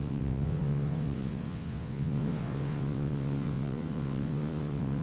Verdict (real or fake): fake